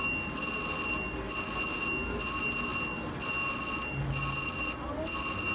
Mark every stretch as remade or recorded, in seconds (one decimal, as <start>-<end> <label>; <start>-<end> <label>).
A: 0.0-5.5 recorded